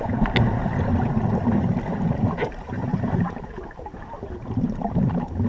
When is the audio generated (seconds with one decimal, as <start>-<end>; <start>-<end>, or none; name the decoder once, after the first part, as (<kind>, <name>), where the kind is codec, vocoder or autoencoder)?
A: 0.0-0.6 (vocoder, BigVGAN v2); 2.0-5.5